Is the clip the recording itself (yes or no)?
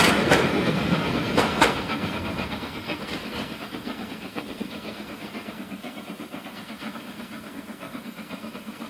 no